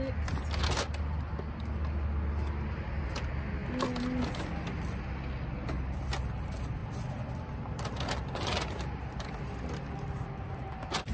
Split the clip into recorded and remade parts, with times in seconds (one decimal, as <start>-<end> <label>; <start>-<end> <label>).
0.0-11.1 recorded